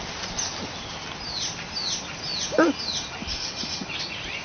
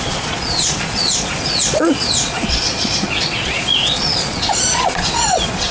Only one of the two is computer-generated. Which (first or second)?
second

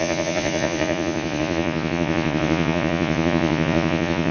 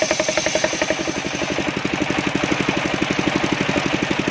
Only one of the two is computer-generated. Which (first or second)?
first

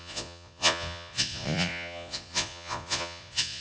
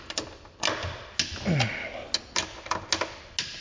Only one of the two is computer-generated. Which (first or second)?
first